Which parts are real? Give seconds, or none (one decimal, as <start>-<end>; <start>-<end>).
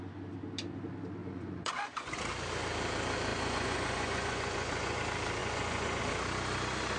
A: 0.0-1.2; 2.2-3.3; 5.0-5.4; 6.0-7.0